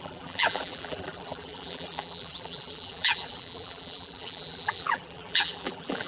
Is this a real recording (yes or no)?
no